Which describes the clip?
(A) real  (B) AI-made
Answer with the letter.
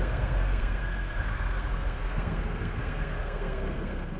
B